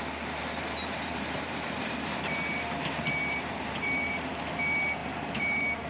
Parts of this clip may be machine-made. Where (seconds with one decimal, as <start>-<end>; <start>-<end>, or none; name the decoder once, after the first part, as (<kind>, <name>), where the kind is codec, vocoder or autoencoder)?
0.8-4.3 (vocoder, BigVGAN v2); 5.0-5.9

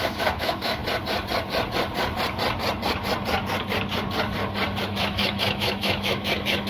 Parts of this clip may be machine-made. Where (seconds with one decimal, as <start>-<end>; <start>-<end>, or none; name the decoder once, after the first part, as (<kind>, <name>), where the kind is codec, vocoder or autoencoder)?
0.0-0.8 (autoencoder, DAC-VAE); 4.8-6.7

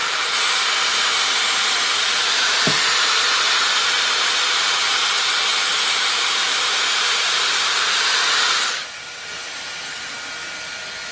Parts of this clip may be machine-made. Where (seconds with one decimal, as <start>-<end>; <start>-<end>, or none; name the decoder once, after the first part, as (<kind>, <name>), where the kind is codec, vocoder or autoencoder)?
0.0-0.7 (vocoder, BigVGAN v2); 1.6-2.8; 5.5-10.1

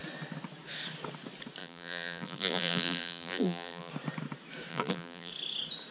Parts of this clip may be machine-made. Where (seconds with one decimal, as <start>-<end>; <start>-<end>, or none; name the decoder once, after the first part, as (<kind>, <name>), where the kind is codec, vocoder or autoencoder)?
1.6-3.9 (vocoder, BigVGAN v2); 4.7-5.3

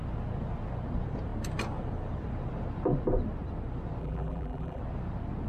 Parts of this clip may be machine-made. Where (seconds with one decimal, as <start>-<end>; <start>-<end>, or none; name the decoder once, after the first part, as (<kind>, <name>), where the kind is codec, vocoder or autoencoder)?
4.0-4.8 (vocoder, BigVGAN v2)